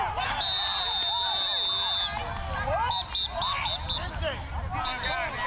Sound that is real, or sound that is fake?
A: real